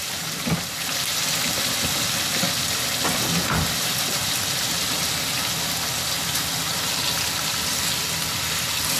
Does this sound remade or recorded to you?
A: recorded